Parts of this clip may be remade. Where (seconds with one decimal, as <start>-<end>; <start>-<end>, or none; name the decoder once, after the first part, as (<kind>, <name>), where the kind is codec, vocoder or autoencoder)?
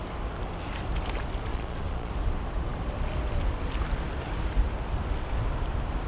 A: 1.5-2.1 (vocoder, Vocos)